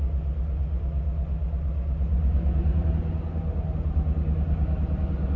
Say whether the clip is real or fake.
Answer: real